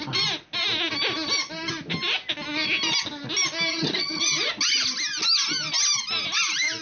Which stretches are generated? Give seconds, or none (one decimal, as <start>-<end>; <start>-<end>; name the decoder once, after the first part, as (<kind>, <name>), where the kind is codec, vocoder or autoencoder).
3.7-4.2 (vocoder, HiFi-GAN)